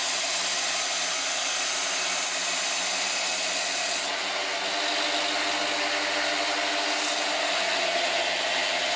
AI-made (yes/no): no